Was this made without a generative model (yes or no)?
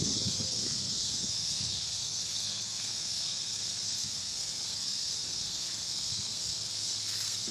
no